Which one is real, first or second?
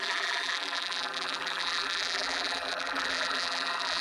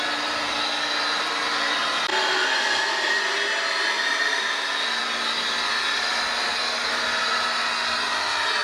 second